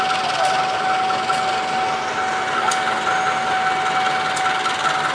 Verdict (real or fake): real